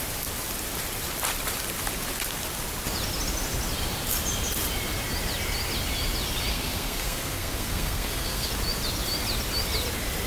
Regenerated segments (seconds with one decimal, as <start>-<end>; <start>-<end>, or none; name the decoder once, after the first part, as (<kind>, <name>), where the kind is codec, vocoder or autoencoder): 6.5-8.5 (codec, SNAC)